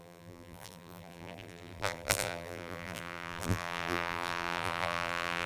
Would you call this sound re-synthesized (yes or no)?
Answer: yes